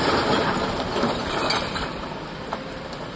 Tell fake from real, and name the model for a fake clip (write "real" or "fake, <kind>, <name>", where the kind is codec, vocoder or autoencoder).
real